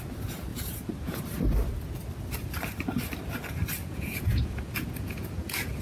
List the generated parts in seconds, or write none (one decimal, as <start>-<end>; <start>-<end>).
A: 0.5-1.2; 3.8-5.8